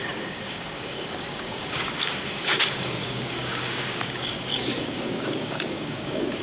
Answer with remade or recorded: remade